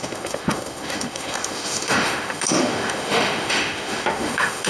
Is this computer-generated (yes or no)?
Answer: yes